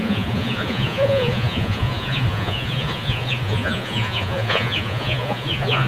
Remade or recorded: remade